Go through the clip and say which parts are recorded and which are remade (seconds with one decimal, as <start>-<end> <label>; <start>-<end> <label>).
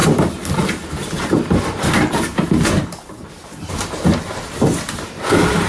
0.0-5.7 recorded